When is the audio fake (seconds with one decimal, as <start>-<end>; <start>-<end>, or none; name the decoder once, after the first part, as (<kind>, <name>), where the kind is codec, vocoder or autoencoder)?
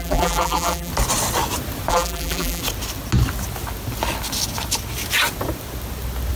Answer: 0.0-0.9 (vocoder, BigVGAN v2); 1.9-2.6